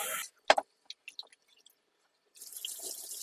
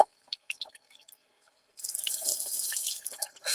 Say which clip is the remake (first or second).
second